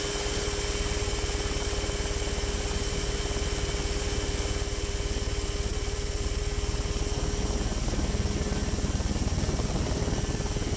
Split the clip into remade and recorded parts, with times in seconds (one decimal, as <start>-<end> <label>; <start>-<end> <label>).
0.0-5.7 recorded; 5.7-6.4 remade; 6.4-10.8 recorded